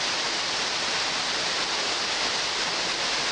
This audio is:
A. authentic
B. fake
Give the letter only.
A